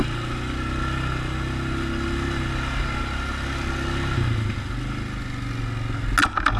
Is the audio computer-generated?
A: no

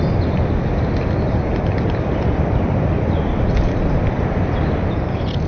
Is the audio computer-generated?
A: no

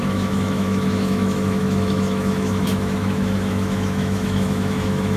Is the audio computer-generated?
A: yes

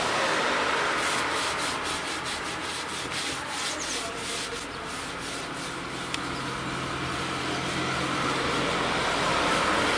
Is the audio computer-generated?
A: no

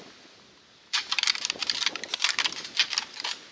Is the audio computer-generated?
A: no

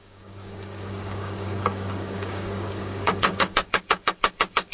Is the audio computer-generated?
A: yes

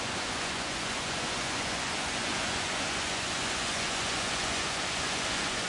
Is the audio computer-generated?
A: yes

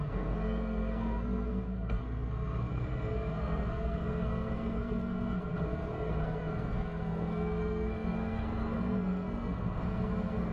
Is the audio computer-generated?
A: yes